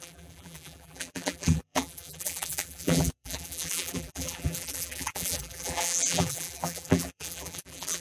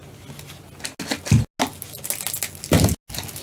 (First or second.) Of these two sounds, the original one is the second